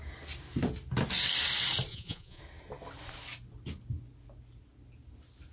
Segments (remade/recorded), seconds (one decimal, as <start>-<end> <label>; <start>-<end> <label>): 0.0-1.9 recorded; 1.9-2.4 remade; 2.4-5.5 recorded